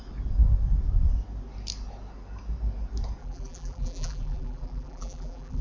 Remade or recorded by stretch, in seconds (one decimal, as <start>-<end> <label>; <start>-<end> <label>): 0.0-3.2 recorded; 3.2-5.6 remade